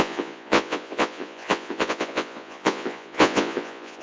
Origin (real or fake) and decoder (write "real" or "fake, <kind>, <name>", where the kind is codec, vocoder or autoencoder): fake, vocoder, Vocos